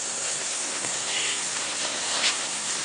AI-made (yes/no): yes